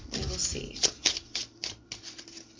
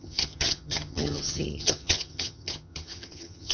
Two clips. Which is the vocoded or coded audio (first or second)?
second